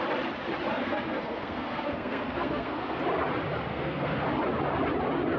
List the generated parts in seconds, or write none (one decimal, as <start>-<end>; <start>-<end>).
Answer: 0.8-3.0; 3.7-4.3